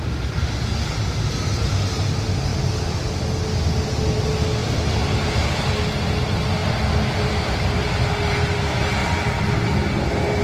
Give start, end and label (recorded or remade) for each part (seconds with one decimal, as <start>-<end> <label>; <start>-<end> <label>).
0.0-2.5 recorded; 2.5-3.1 remade; 3.1-4.6 recorded; 4.6-5.7 remade; 5.7-10.4 recorded

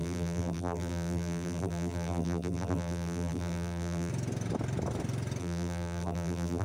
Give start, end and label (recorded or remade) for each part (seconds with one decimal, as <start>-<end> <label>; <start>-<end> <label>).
0.0-4.1 remade; 4.1-5.4 recorded; 5.4-6.6 remade

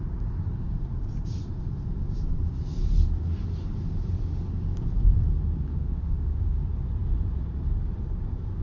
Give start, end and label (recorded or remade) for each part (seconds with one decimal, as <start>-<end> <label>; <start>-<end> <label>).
0.0-5.7 recorded; 5.7-6.6 remade; 6.6-8.6 recorded

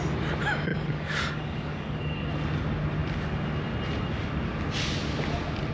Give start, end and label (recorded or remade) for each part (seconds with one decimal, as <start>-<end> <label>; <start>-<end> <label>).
0.0-0.7 recorded; 0.7-2.3 remade; 2.3-5.7 recorded